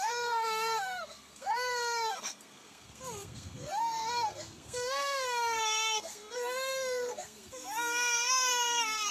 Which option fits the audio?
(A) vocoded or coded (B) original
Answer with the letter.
A